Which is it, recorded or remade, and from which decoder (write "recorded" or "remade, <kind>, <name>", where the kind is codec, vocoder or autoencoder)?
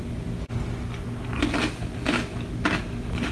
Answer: recorded